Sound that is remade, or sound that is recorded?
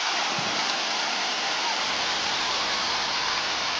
recorded